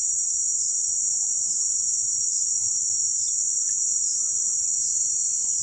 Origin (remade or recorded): remade